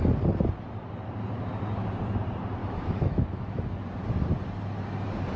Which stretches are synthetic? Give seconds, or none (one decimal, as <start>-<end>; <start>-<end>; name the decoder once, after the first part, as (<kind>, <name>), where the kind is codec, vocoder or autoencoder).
2.6-3.8 (autoencoder, DAC-VAE)